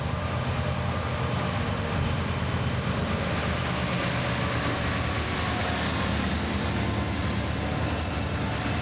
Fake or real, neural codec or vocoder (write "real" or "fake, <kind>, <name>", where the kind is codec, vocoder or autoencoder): real